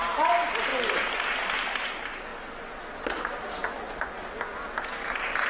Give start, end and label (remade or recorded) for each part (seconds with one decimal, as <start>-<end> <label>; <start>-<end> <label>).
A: 0.0-0.7 remade; 0.7-1.5 recorded; 1.5-2.3 remade; 2.3-3.0 recorded; 3.0-3.6 remade; 3.6-5.1 recorded; 5.1-5.5 remade